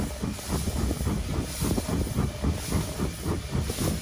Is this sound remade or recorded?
recorded